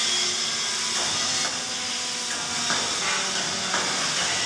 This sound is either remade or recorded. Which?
recorded